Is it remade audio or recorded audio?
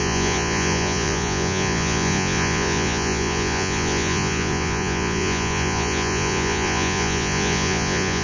remade